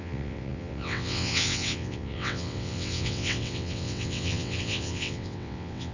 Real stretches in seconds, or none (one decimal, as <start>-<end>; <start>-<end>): none